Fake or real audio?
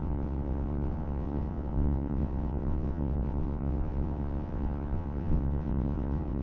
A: fake